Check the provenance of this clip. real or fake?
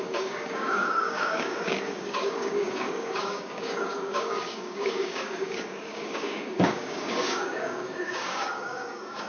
fake